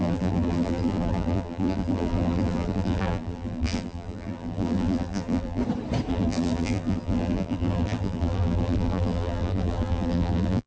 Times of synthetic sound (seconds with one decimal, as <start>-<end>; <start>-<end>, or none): 0.0-5.6; 6.1-10.7